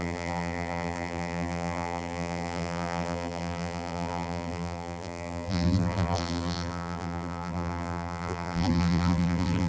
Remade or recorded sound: remade